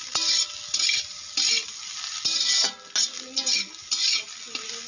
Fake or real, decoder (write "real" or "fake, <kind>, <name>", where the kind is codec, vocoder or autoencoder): real